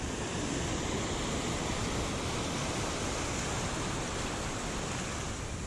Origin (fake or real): real